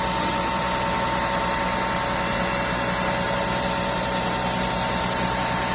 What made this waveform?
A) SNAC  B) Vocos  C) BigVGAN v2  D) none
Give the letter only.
D